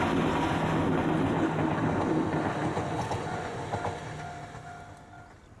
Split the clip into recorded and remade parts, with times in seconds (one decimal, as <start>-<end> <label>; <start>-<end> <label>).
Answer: 0.0-2.6 recorded; 2.6-3.6 remade; 3.6-5.6 recorded